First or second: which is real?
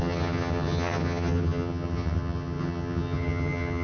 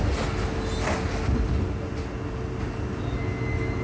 second